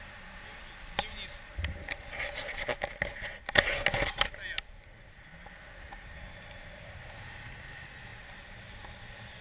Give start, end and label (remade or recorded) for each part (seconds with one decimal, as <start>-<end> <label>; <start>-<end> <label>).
0.0-9.4 recorded